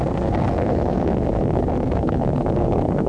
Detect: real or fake fake